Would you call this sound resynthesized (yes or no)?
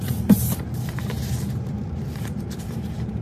yes